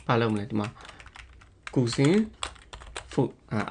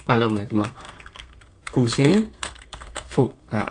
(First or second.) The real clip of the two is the first